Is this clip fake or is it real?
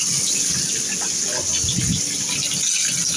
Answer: real